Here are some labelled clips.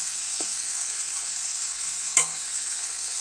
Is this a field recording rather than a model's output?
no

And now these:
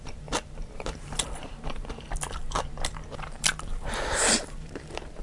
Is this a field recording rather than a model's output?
no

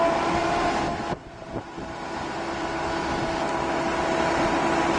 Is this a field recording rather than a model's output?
yes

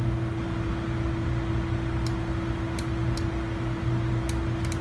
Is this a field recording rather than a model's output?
yes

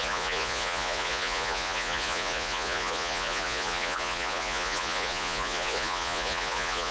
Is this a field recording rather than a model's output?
no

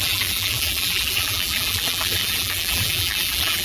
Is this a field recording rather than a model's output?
no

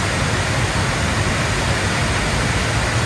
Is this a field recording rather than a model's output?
yes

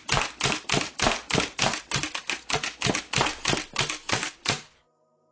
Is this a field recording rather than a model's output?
yes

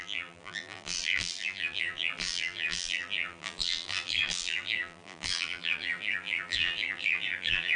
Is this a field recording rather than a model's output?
no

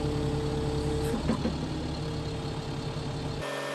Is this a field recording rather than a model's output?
yes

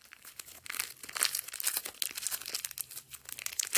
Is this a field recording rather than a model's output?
yes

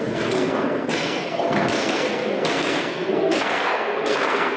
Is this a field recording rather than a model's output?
no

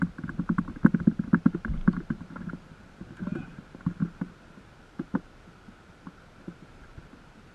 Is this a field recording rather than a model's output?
yes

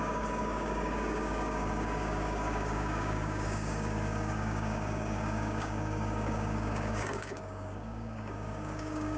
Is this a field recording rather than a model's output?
no